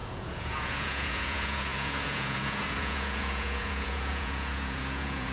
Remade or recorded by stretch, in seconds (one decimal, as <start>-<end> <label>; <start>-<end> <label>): 0.0-5.3 remade